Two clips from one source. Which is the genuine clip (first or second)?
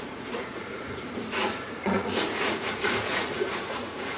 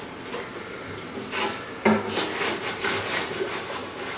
second